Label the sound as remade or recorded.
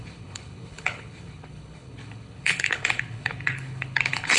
remade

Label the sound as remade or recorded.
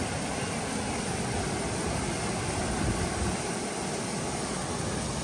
recorded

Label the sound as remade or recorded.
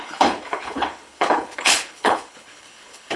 remade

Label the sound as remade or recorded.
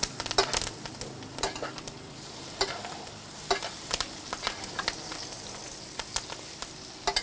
recorded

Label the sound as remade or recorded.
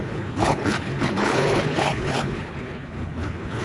remade